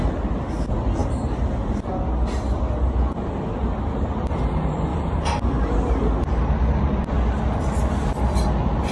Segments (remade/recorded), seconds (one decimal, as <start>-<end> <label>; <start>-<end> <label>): 0.0-8.9 recorded